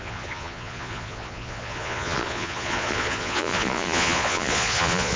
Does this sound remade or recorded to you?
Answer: remade